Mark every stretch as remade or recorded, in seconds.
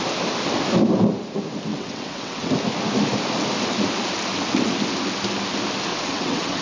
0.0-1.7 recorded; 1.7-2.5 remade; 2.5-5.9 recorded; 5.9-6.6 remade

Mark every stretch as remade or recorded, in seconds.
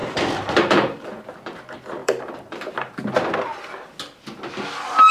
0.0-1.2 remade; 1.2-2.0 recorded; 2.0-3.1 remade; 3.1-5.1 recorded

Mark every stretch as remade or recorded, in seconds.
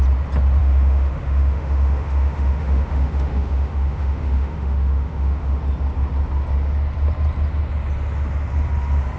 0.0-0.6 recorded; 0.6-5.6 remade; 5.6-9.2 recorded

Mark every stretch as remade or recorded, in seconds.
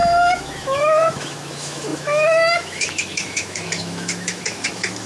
0.0-5.1 remade